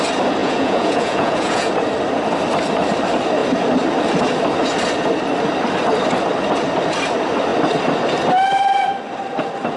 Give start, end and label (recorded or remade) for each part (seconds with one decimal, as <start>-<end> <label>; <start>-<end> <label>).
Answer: 0.0-0.4 recorded; 0.4-1.7 remade; 1.7-9.8 recorded